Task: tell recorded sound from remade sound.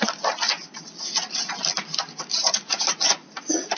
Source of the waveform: recorded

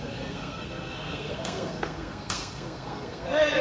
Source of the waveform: remade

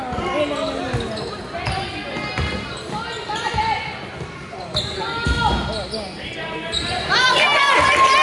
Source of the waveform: recorded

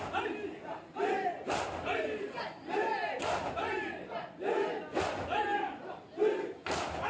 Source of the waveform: recorded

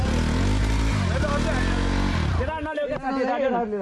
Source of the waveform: recorded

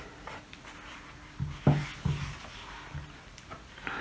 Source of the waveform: recorded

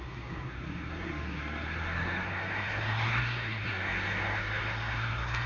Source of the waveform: remade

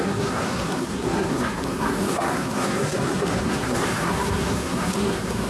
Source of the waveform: remade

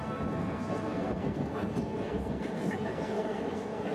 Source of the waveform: remade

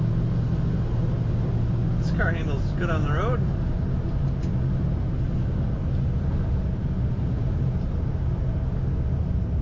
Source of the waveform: recorded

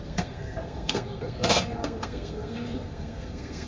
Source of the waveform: remade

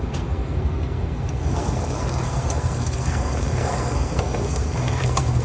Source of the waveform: remade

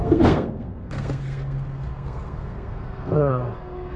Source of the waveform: remade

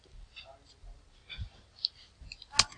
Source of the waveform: recorded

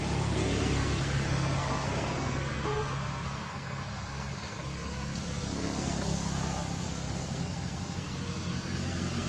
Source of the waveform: remade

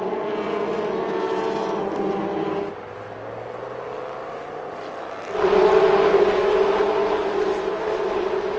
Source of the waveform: recorded